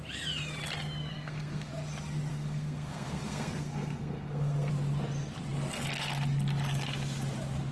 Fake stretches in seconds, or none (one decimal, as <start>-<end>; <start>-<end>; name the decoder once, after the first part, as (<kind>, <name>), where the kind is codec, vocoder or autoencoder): 1.1-1.7 (codec, SNAC); 2.3-4.7